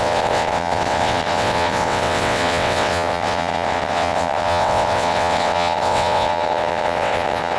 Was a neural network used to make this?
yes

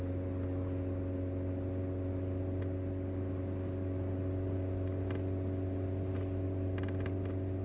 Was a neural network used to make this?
no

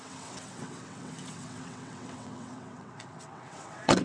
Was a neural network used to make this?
yes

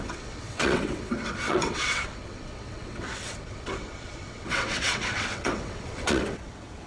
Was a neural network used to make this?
yes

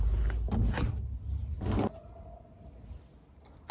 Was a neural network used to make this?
no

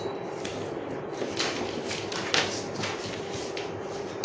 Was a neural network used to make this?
no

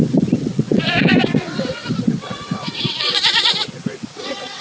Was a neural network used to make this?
yes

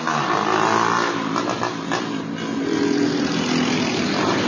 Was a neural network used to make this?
no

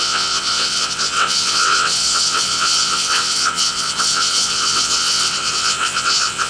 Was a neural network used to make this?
yes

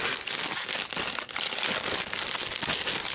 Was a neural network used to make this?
no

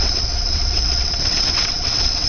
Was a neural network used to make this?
yes